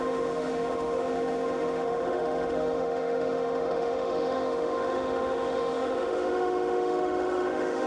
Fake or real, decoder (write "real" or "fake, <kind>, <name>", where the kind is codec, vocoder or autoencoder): fake, autoencoder, DAC-VAE